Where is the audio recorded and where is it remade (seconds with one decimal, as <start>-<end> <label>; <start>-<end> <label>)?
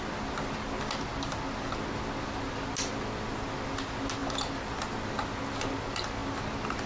0.0-6.9 recorded